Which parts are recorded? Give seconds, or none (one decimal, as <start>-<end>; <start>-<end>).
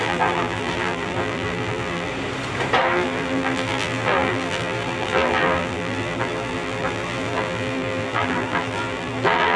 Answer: 2.1-2.8